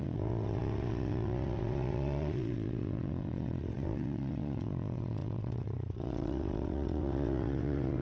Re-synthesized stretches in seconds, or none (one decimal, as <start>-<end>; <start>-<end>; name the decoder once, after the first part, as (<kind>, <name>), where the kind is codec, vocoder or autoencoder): 0.0-8.0 (vocoder, WaveNeXt)